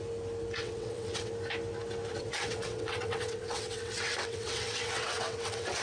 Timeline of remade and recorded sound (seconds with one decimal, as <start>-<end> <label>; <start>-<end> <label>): 0.0-0.6 recorded; 0.6-1.3 remade; 1.3-2.1 recorded; 2.1-5.8 remade